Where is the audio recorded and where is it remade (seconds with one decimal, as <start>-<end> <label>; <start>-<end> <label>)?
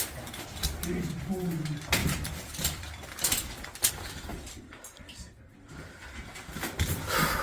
0.0-2.0 recorded; 2.0-3.9 remade; 3.9-4.3 recorded; 4.3-7.4 remade